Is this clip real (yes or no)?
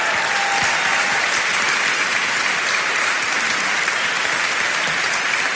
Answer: yes